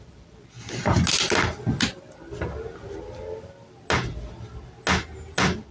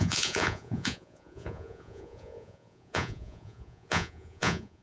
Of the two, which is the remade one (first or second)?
second